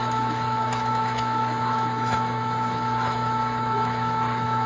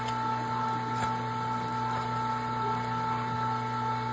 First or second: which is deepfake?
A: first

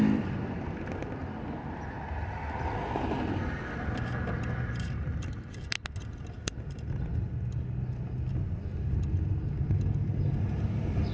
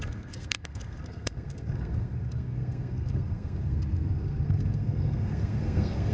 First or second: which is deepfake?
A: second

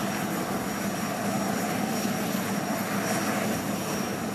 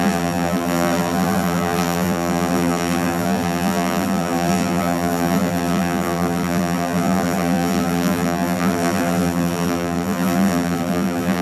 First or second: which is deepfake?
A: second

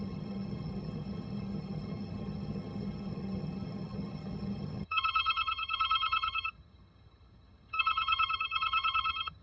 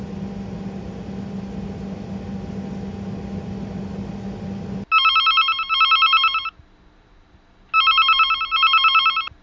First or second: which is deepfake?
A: first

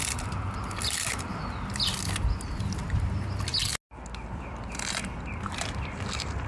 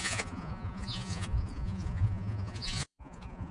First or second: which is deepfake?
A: second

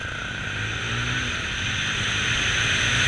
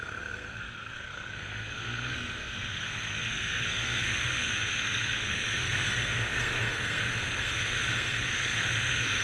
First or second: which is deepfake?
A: second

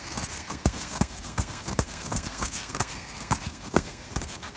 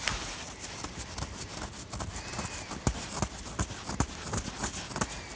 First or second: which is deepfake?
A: first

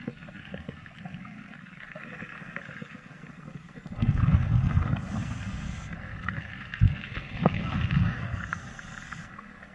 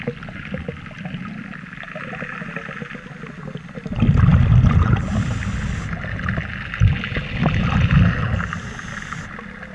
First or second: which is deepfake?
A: first